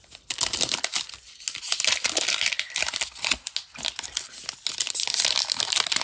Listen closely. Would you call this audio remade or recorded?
recorded